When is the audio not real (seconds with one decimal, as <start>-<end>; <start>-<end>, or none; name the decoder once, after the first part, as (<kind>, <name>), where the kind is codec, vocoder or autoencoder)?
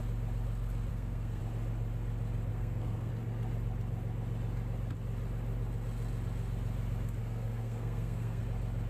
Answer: 0.9-1.4 (codec, SNAC); 2.5-3.1; 7.2-8.4